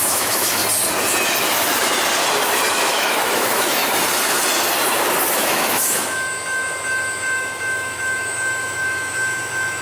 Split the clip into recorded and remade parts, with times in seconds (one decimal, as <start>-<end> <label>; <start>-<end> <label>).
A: 0.0-0.6 remade; 0.6-2.7 recorded; 2.7-3.8 remade; 3.8-5.3 recorded; 5.3-9.8 remade

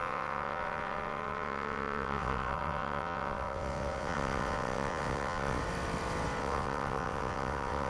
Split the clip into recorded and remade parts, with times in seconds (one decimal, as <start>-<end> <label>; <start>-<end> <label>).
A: 0.0-5.6 remade; 5.6-6.4 recorded; 6.4-7.9 remade

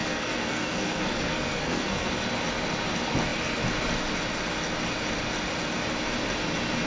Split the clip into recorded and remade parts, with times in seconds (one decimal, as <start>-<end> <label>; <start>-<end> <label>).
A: 0.0-2.1 remade; 2.1-6.9 recorded